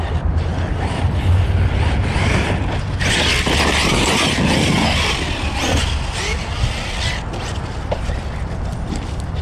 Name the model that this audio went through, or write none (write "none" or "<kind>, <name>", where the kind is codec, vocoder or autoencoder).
none